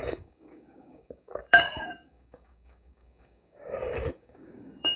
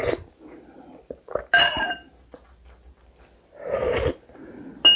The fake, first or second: first